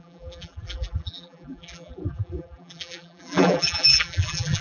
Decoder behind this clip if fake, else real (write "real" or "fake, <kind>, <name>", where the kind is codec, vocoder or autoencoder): fake, vocoder, BigVGAN v2